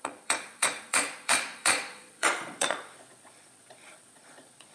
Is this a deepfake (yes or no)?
yes